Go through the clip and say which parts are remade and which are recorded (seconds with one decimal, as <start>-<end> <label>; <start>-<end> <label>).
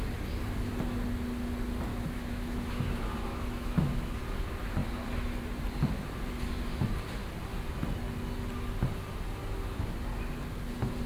0.0-1.9 recorded; 1.9-4.2 remade; 4.2-11.1 recorded